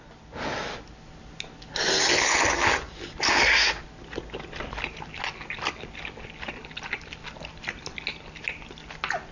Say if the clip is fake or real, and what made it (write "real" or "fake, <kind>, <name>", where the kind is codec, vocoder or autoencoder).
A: real